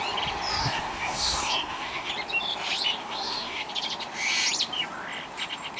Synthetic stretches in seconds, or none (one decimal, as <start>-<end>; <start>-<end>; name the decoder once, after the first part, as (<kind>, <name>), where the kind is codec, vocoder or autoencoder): 0.6-2.1 (codec, SNAC); 3.0-3.7